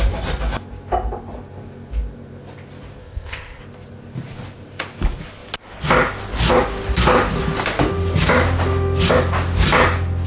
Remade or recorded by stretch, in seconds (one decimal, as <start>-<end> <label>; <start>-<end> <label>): 0.0-3.0 recorded; 3.0-3.6 remade; 3.6-10.3 recorded